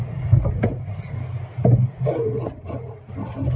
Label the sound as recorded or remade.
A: recorded